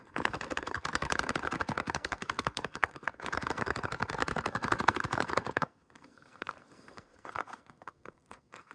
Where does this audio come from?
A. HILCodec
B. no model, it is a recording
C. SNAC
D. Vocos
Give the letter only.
C